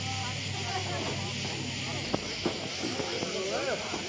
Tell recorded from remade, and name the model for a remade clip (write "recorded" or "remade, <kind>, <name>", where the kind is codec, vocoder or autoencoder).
recorded